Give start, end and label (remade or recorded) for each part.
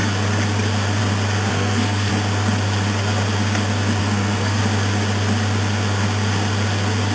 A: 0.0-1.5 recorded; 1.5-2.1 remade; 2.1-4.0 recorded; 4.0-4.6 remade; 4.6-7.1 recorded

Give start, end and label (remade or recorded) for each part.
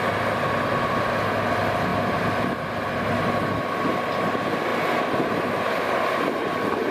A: 0.0-6.9 recorded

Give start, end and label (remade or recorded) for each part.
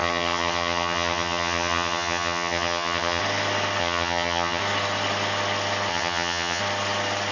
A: 0.0-3.2 remade; 3.2-3.8 recorded; 3.8-4.6 remade; 4.6-5.9 recorded; 5.9-6.6 remade; 6.6-7.3 recorded